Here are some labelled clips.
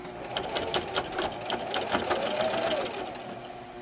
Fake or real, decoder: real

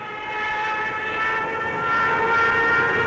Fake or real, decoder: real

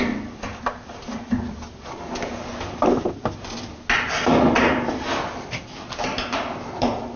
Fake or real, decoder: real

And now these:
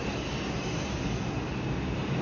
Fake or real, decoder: real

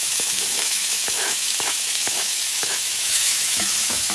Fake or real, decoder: fake, autoencoder, DAC-VAE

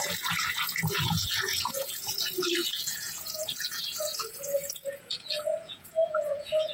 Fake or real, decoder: fake, vocoder, Vocos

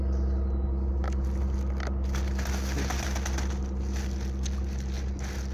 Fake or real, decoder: real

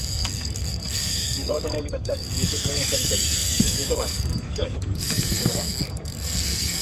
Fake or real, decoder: fake, codec, SNAC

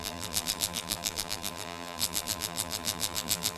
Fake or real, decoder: fake, vocoder, BigVGAN v2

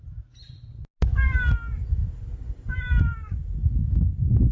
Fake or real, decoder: real